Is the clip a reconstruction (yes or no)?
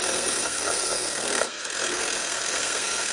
yes